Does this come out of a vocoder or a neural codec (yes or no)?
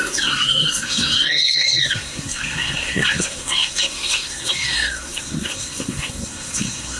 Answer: yes